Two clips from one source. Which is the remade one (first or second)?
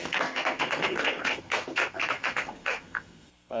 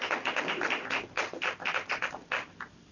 first